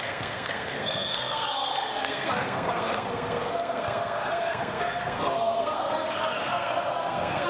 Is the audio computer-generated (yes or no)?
yes